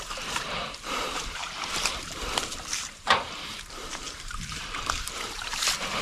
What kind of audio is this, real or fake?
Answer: fake